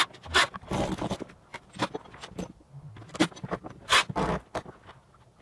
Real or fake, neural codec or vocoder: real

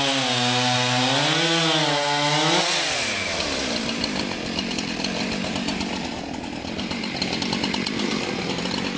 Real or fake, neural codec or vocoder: real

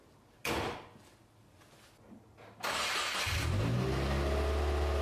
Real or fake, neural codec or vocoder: real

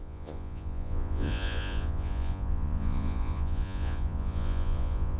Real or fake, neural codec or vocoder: fake, vocoder, Vocos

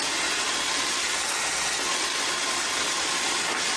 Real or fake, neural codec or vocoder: real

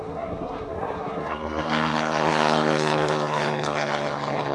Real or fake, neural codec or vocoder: fake, codec, SNAC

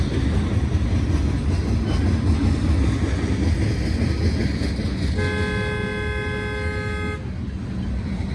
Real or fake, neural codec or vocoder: real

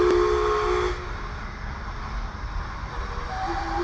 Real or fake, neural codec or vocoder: real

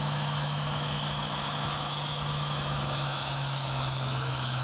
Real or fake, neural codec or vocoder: fake, autoencoder, DAC-VAE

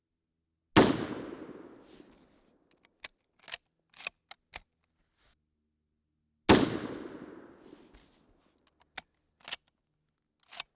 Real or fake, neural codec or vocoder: real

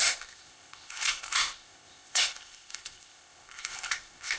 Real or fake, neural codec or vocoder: fake, codec, ZipCodec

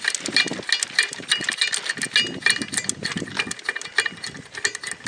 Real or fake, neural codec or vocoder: real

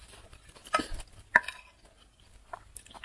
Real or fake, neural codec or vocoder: real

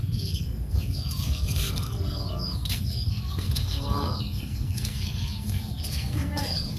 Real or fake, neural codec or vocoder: fake, codec, SNAC